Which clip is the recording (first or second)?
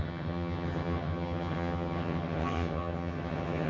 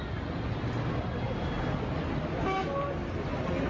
second